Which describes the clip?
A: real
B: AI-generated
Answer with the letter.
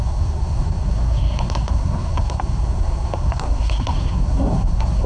B